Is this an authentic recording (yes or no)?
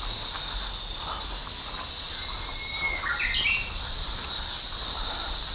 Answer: yes